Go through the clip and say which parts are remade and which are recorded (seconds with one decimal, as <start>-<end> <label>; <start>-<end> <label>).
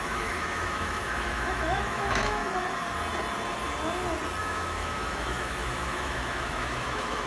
0.0-2.4 remade; 2.4-4.4 recorded; 4.4-7.3 remade